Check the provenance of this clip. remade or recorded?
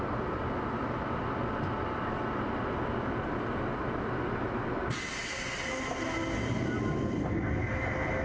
recorded